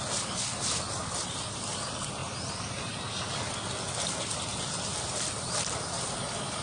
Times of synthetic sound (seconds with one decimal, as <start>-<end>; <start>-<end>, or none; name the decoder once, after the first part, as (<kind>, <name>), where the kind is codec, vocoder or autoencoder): none